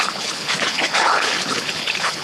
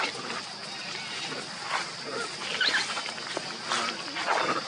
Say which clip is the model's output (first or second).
first